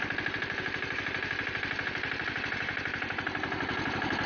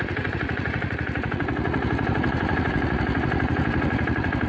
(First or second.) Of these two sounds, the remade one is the second